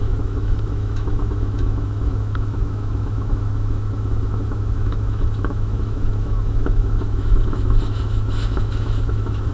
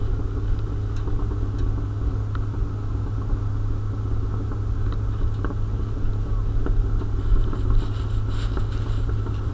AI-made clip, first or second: first